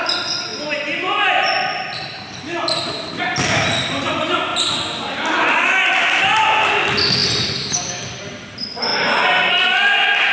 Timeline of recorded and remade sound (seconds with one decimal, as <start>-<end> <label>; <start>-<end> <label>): 0.0-10.3 recorded